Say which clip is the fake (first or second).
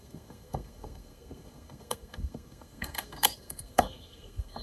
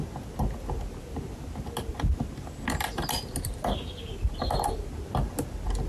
first